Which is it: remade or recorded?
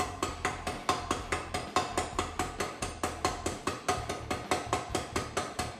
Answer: recorded